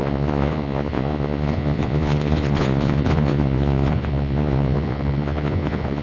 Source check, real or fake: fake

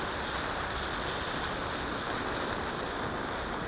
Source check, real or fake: real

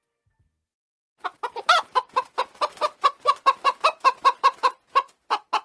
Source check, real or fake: real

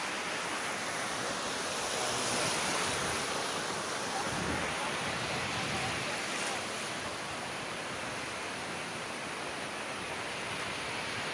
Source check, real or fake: real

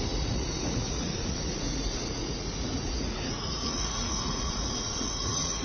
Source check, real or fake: fake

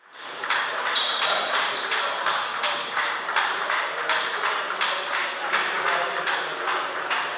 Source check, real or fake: fake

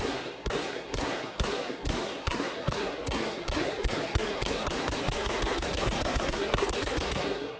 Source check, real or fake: fake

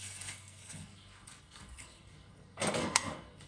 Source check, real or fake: fake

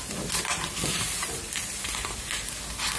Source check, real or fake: real